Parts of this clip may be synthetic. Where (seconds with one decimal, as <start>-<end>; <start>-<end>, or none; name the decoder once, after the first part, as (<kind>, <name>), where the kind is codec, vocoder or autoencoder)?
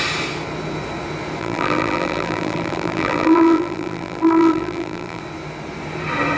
1.4-5.2 (vocoder, BigVGAN v2)